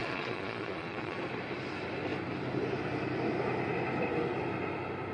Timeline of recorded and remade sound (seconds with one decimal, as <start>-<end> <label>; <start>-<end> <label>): 0.0-1.2 remade; 1.2-5.1 recorded